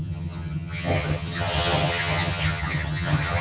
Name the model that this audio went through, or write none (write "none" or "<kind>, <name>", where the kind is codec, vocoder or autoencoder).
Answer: vocoder, HiFi-GAN